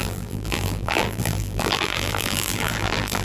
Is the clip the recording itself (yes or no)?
no